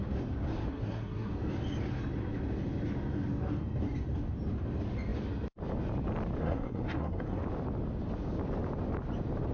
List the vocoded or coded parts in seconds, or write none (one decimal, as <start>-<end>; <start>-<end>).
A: 0.7-1.3; 6.4-7.4